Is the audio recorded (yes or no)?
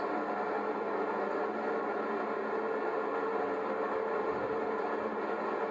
yes